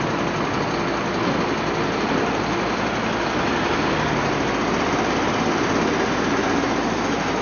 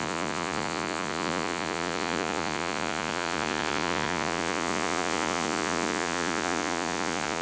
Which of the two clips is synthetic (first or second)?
second